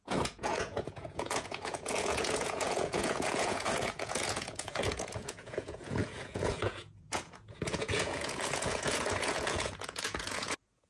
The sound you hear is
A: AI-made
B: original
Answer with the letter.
A